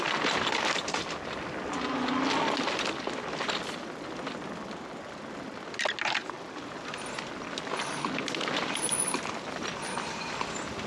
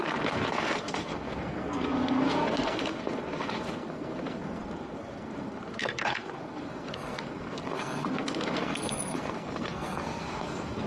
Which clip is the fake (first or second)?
second